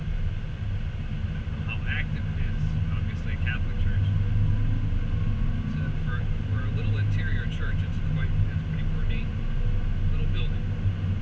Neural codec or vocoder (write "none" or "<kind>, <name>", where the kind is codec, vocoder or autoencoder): none